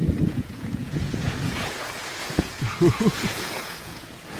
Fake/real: fake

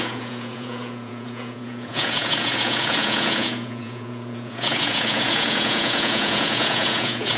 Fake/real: fake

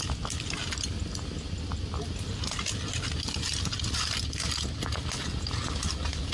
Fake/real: real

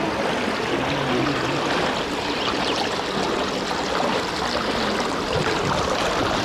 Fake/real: real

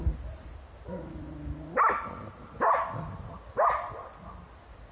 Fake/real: real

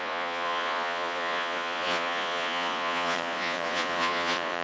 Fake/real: fake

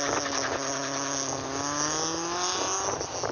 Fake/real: real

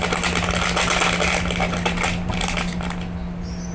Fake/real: real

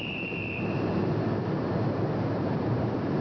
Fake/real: fake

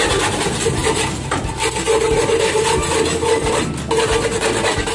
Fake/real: real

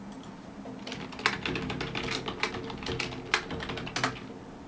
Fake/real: real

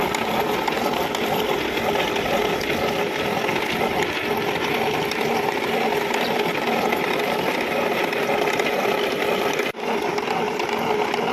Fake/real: real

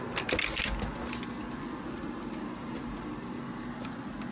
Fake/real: real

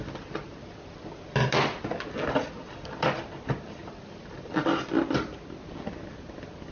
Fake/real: real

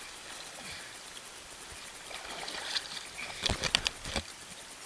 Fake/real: fake